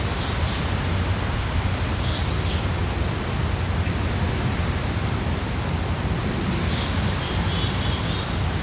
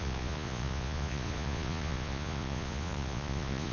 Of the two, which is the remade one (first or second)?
second